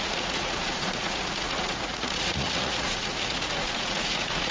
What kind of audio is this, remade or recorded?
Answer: remade